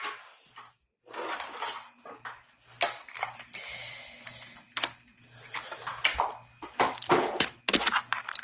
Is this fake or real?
real